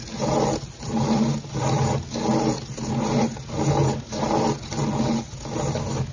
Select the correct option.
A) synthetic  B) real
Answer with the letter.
B